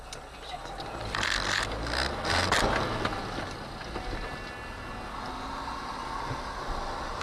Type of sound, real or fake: real